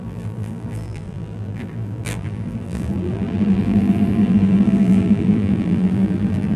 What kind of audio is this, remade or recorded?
remade